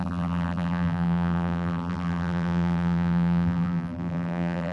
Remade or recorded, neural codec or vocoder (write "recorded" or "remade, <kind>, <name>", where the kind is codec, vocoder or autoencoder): remade, vocoder, BigVGAN v2